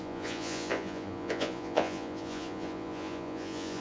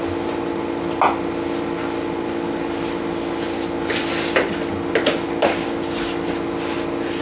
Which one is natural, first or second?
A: second